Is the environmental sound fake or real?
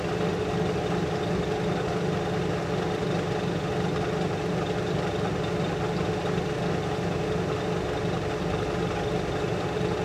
real